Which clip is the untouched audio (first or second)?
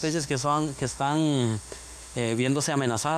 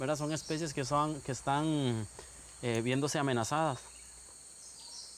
second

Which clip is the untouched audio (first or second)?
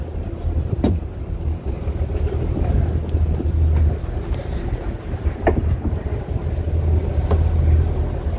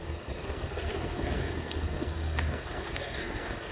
first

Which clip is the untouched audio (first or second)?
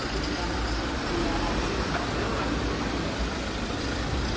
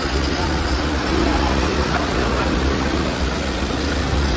first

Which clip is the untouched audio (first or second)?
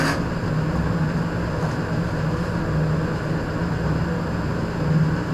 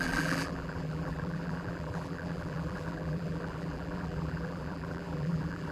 first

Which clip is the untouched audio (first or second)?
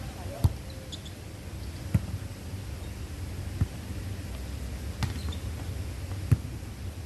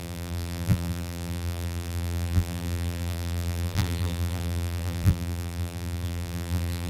first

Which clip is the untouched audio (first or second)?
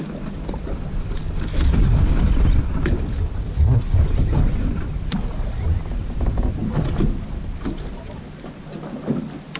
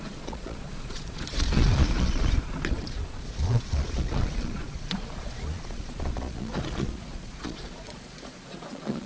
first